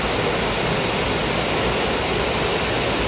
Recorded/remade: recorded